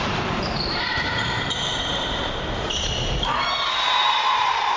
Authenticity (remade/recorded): remade